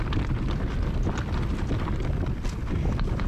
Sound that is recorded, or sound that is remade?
recorded